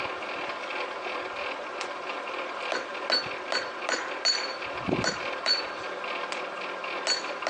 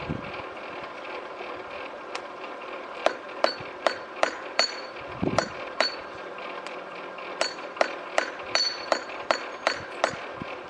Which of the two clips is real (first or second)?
first